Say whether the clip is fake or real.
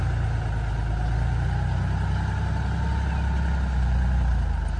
real